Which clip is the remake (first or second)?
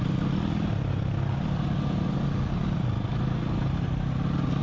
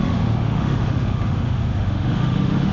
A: second